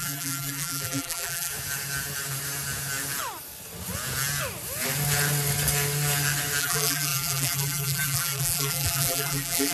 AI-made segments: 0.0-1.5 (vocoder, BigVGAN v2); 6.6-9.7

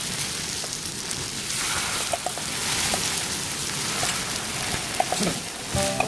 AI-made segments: none

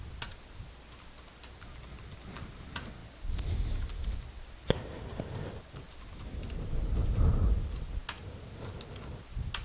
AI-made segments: 3.0-5.5 (vocoder, BigVGAN v2)